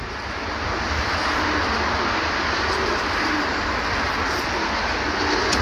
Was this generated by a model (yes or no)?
no